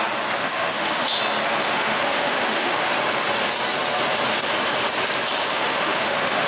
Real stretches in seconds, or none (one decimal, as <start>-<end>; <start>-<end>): 0.0-0.4; 1.2-1.6; 2.9-5.4